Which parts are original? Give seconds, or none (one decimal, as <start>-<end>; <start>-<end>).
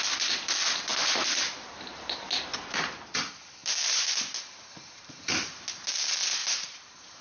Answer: 0.0-0.9; 2.4-3.6; 5.6-6.4